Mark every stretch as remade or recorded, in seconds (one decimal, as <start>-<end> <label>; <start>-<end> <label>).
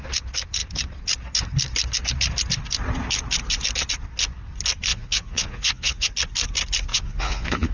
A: 0.0-4.9 recorded; 4.9-6.1 remade; 6.1-6.9 recorded; 6.9-7.7 remade